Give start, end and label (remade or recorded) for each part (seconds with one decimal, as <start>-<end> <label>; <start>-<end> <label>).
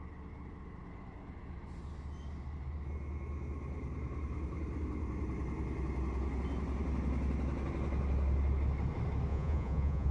0.0-9.3 recorded; 9.3-10.1 remade